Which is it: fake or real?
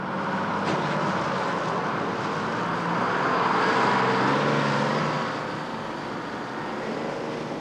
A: real